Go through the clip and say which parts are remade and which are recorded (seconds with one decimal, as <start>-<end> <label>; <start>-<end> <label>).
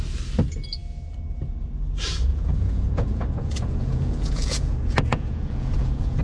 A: 0.0-2.3 recorded; 2.3-6.2 remade